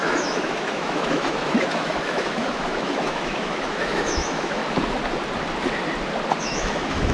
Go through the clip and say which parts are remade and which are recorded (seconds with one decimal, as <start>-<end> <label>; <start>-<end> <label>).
0.0-4.6 remade; 4.6-6.4 recorded; 6.4-7.1 remade